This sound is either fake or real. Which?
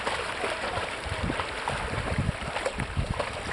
real